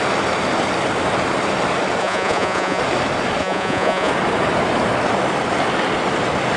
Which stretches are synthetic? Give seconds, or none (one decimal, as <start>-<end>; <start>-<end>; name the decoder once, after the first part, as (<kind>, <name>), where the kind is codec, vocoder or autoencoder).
2.0-2.8 (vocoder, Vocos); 3.4-4.1